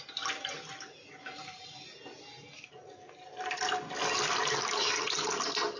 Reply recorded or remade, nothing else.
recorded